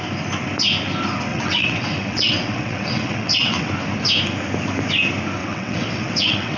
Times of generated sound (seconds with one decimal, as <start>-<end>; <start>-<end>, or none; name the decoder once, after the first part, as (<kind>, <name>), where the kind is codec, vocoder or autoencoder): 1.3-3.7 (vocoder, WaveNeXt); 5.4-6.6